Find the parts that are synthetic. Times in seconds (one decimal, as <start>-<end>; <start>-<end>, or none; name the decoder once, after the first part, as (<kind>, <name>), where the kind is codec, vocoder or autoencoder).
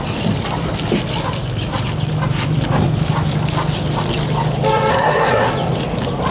4.9-5.5 (codec, SNAC)